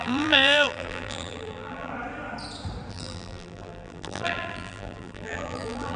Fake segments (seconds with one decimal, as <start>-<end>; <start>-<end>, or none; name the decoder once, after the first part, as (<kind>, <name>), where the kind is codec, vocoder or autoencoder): 0.0-1.9 (vocoder, BigVGAN v2); 2.9-6.0